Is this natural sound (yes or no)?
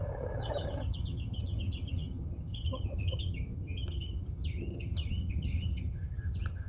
no